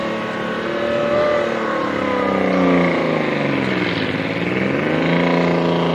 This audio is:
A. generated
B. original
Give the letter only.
B